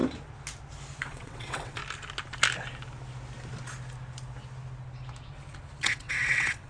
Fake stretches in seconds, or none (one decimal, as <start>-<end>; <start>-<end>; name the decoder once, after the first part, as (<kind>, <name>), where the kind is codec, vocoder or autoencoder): 1.0-1.8 (vocoder, WaveNeXt); 5.8-6.7